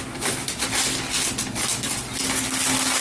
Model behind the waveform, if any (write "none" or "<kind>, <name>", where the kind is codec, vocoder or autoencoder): none